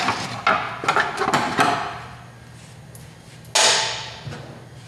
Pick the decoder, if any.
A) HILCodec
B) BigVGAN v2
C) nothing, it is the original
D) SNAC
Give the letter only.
C